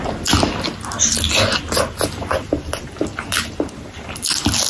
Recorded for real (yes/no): yes